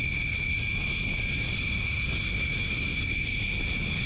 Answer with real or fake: real